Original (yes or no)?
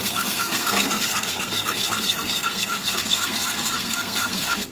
no